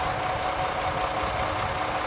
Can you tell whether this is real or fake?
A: real